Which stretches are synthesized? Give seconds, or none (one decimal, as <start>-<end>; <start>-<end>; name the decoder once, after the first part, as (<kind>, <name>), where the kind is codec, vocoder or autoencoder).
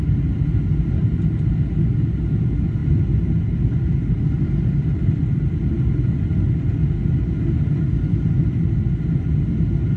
none